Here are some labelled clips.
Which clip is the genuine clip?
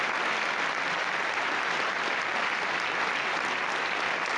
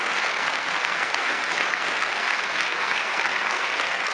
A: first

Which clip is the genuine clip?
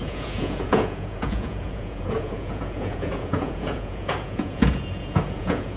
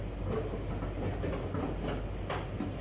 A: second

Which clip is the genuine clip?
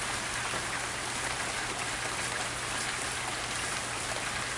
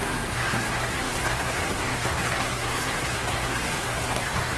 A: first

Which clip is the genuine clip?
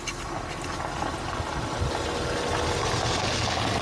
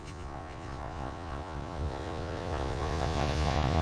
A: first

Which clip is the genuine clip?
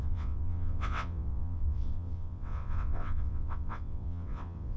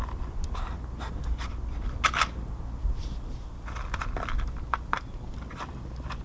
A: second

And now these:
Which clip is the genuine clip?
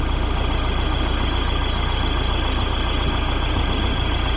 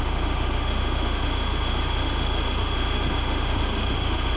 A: first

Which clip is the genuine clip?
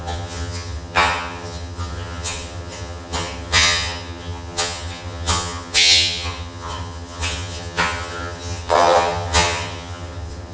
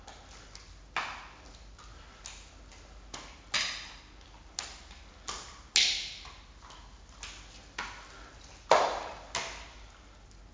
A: second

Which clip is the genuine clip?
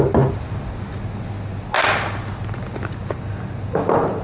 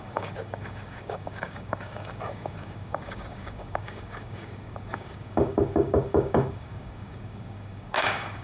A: first